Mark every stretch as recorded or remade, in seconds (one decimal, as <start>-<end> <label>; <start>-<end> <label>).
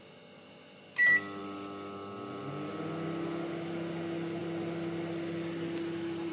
0.0-6.3 recorded